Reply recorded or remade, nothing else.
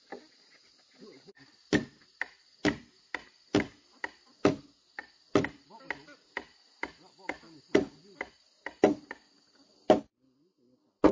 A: recorded